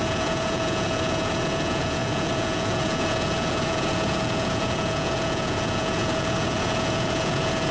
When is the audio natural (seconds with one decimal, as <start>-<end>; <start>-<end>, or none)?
none